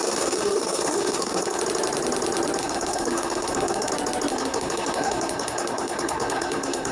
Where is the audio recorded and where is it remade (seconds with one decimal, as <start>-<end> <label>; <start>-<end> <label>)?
0.0-1.6 remade; 1.6-2.6 recorded; 2.6-3.9 remade; 3.9-4.3 recorded; 4.3-6.9 remade